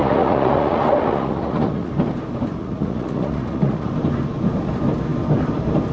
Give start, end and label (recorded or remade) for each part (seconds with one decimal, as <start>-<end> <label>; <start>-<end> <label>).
0.0-1.9 remade; 1.9-2.6 recorded; 2.6-3.9 remade; 3.9-5.9 recorded